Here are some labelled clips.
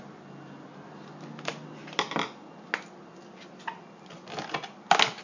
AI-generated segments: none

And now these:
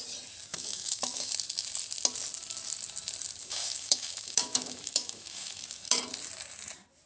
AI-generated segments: 0.5-1.3 (autoencoder, DAC-VAE); 3.4-6.0

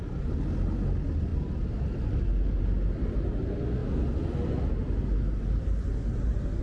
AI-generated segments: none